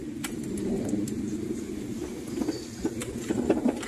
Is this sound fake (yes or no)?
no